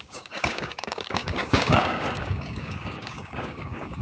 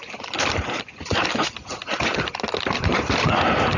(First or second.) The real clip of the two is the second